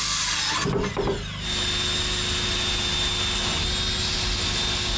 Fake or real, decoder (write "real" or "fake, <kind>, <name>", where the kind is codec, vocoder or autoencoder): real